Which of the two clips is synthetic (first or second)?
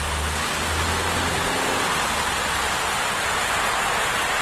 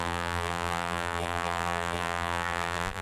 second